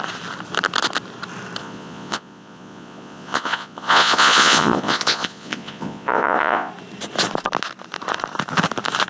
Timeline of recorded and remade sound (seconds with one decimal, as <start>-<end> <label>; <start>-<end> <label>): 0.0-1.6 recorded; 1.6-6.7 remade; 6.7-9.1 recorded